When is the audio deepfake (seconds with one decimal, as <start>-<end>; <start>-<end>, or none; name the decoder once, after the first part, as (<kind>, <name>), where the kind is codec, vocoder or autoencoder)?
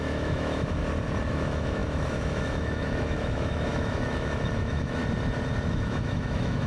0.0-0.8 (autoencoder, DAC-VAE); 1.3-5.0; 5.7-6.7